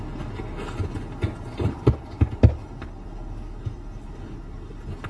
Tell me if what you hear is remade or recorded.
recorded